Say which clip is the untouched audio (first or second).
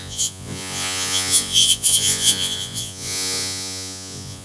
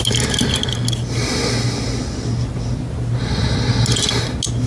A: second